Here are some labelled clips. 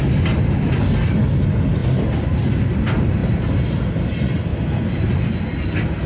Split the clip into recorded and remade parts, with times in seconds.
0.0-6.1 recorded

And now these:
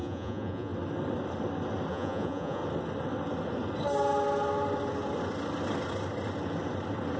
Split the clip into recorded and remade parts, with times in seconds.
0.0-0.7 remade; 0.7-1.9 recorded; 1.9-2.6 remade; 2.6-7.2 recorded

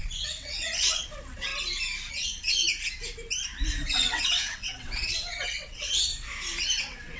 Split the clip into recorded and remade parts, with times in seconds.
0.0-1.5 remade; 1.5-2.1 recorded; 2.1-2.6 remade; 2.6-3.9 recorded; 3.9-6.1 remade; 6.1-6.8 recorded; 6.8-7.2 remade

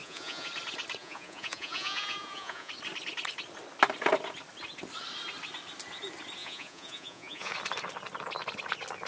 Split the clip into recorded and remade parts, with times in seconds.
0.0-0.5 remade; 0.5-1.0 recorded; 1.0-2.7 remade; 2.7-6.4 recorded; 6.4-7.5 remade; 7.5-9.1 recorded